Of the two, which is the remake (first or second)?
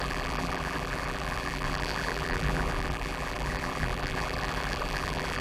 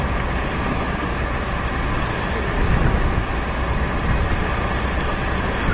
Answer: first